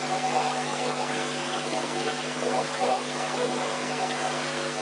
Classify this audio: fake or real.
fake